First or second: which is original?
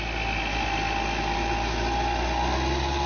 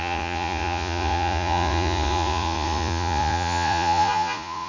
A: first